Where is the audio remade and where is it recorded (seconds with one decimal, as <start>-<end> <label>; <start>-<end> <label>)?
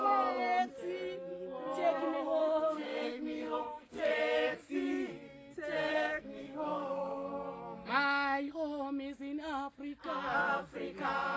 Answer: 0.0-2.4 recorded; 2.4-4.1 remade; 4.1-5.9 recorded; 5.9-7.3 remade; 7.3-11.4 recorded